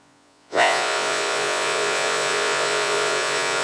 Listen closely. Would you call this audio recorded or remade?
remade